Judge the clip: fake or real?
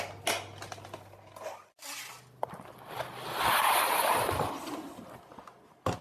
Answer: real